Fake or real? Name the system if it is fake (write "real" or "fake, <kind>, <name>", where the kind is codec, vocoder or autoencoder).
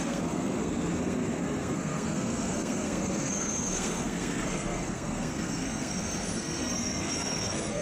fake, codec, SNAC